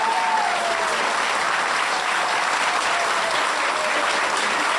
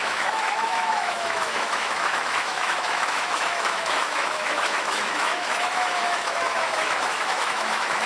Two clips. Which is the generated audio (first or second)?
second